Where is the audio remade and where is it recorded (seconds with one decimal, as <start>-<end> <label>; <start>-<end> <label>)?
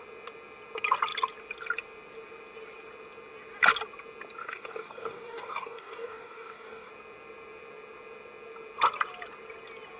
0.0-4.4 recorded; 4.4-6.9 remade; 6.9-10.0 recorded